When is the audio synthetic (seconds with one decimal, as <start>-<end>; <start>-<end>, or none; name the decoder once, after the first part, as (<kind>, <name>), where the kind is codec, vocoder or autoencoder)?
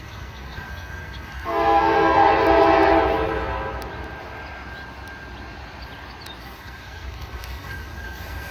0.0-2.2 (codec, SNAC); 6.4-8.5